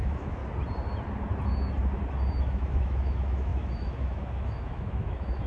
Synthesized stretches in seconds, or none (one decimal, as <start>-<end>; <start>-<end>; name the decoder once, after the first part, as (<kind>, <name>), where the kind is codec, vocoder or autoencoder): 0.0-0.4 (autoencoder, DAC-VAE); 2.4-5.5